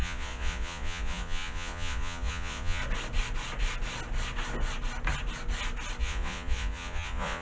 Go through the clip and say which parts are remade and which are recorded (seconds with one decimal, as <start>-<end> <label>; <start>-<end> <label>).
0.0-2.8 remade; 2.8-6.0 recorded; 6.0-7.4 remade